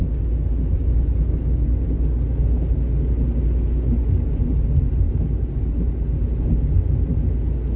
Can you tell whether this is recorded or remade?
recorded